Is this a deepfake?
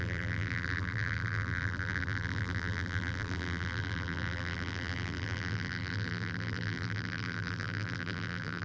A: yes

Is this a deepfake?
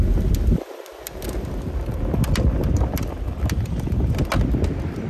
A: no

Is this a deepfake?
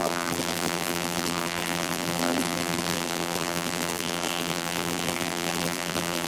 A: yes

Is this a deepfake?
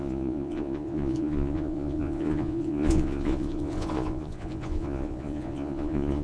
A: yes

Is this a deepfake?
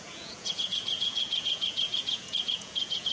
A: yes